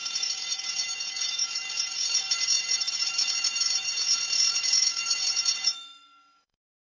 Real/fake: fake